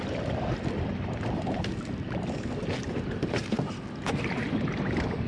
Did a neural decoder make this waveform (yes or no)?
no